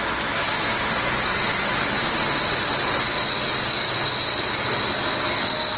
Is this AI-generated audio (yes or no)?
no